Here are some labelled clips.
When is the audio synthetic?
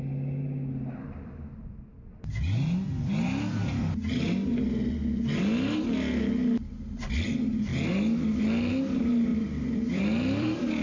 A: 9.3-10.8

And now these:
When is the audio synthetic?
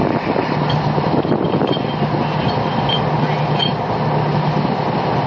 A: none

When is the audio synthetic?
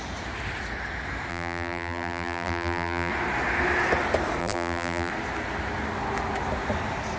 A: 1.3-3.1; 4.4-5.1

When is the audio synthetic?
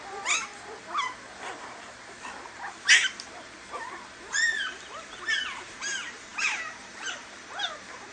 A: 0.0-0.5; 4.3-8.1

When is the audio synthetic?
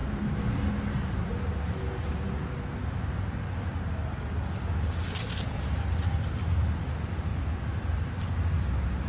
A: 0.0-0.7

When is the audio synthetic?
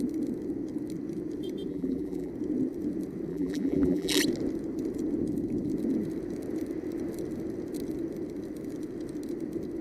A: 1.7-2.3; 3.3-4.2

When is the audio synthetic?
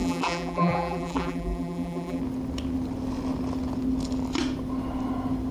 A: 0.0-2.2